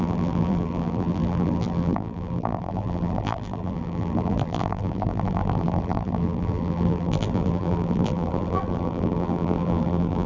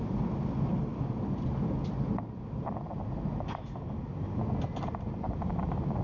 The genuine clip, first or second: second